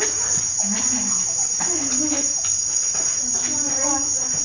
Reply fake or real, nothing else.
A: real